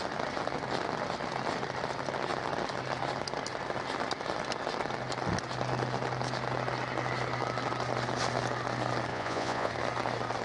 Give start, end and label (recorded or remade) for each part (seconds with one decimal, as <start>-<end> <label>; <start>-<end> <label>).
0.0-9.1 recorded; 9.1-9.7 remade; 9.7-10.4 recorded